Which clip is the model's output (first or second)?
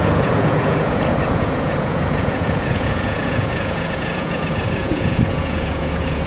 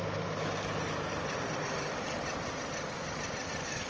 first